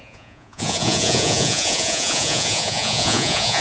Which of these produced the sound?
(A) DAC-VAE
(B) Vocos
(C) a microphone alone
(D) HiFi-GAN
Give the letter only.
B